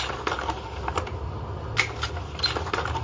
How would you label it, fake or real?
real